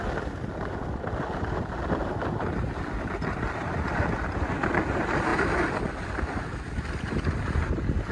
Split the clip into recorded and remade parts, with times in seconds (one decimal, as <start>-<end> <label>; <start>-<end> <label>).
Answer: 0.0-8.1 recorded